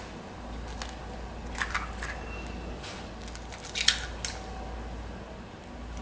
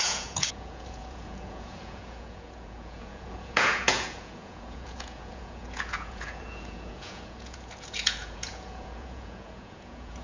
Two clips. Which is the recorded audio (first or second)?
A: first